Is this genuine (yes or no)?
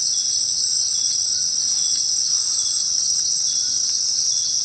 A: no